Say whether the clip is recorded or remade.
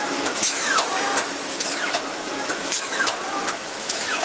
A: remade